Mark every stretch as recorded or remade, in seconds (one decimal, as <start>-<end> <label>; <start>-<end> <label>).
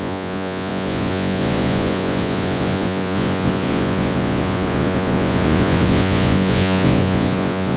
0.0-7.8 remade